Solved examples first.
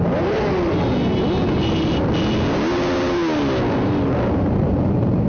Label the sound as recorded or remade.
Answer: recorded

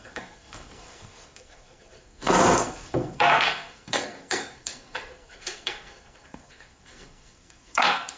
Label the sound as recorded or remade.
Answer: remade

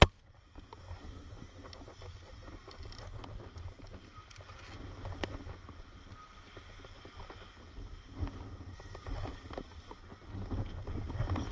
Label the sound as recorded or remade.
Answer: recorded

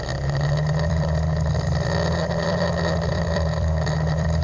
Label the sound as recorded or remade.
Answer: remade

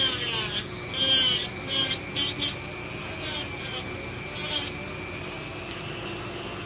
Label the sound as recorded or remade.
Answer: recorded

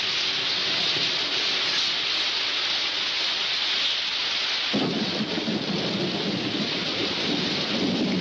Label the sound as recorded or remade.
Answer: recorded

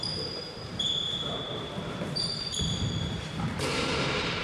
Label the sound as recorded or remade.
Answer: remade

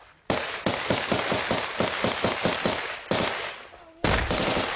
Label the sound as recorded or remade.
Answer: recorded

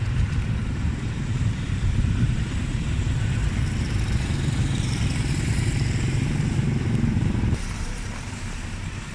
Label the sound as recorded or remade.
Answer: remade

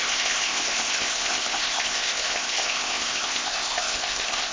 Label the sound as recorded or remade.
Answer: remade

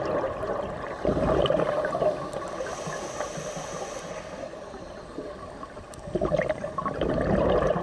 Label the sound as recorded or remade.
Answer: recorded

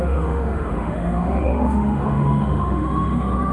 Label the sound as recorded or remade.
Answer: remade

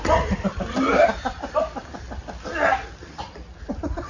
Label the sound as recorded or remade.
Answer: recorded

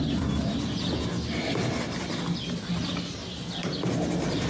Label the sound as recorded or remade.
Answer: recorded